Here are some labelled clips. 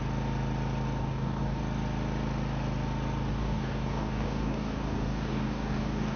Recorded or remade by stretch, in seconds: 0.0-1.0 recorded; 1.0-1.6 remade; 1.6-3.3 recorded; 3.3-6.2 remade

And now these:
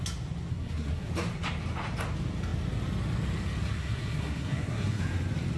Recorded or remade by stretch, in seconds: 0.0-0.5 recorded; 0.5-1.1 remade; 1.1-3.6 recorded; 3.6-5.0 remade; 5.0-5.6 recorded

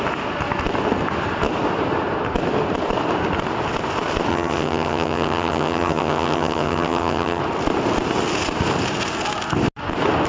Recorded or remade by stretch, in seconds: 0.0-4.3 recorded; 4.3-7.4 remade; 7.4-10.3 recorded

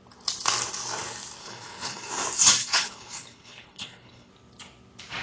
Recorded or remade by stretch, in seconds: 0.0-1.4 recorded; 1.4-2.1 remade; 2.1-2.6 recorded; 2.6-4.3 remade; 4.3-5.2 recorded

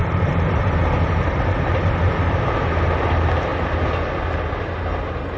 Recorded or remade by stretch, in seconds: 0.0-5.4 recorded

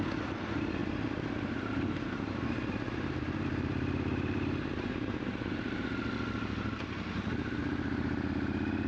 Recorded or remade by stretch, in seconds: 0.0-0.8 recorded; 0.8-5.8 remade; 5.8-7.6 recorded; 7.6-8.3 remade; 8.3-8.9 recorded

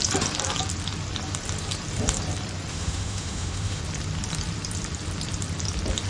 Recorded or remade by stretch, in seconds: 0.0-2.7 recorded; 2.7-3.8 remade; 3.8-6.1 recorded